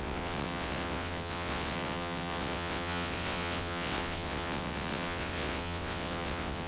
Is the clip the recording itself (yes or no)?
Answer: no